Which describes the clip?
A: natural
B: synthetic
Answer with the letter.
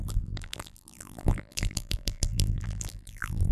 B